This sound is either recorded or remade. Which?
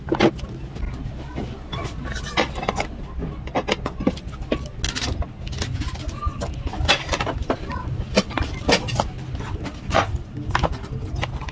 recorded